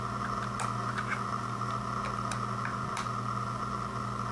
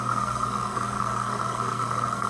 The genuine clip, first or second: first